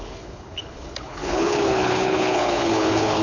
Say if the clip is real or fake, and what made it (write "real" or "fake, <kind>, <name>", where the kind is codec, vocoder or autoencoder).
fake, codec, HILCodec